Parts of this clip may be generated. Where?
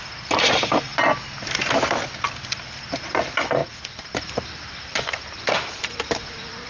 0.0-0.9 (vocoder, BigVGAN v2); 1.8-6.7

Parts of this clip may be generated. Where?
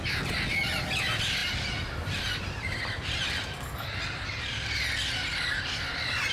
1.4-4.5 (vocoder, BigVGAN v2)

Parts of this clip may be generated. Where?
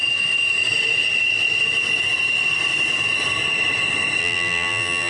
4.2-5.1 (vocoder, BigVGAN v2)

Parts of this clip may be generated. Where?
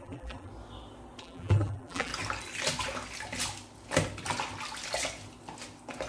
0.0-0.5 (vocoder, BigVGAN v2); 1.2-2.1